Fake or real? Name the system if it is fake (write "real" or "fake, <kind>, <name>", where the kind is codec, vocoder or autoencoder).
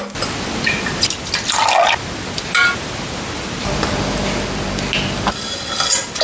real